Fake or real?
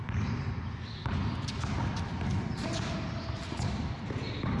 real